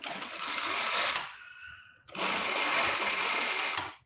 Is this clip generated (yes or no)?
no